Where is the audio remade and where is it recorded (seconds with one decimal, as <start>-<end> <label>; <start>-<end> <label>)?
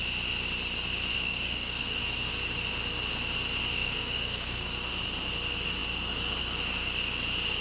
0.0-1.1 recorded; 1.1-2.0 remade; 2.0-3.8 recorded; 3.8-4.7 remade; 4.7-7.6 recorded